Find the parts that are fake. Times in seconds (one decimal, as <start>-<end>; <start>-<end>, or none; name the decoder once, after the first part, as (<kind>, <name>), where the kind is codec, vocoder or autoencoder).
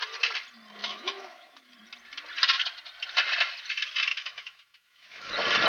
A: 0.8-1.7 (autoencoder, DAC-VAE); 4.1-5.3